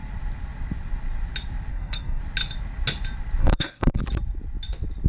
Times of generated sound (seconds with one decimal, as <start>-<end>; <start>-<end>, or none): 1.7-2.2; 3.4-4.0